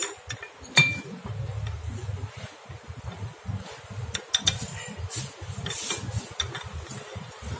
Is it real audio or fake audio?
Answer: real